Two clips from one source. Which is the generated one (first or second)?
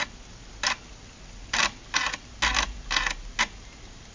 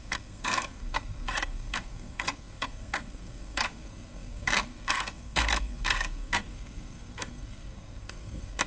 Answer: second